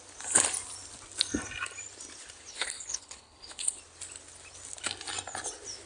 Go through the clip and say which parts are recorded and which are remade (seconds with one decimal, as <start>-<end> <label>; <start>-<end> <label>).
0.0-2.5 recorded; 2.5-3.8 remade; 3.8-5.9 recorded